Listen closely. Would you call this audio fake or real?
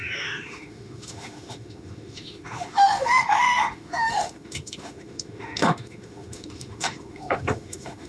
fake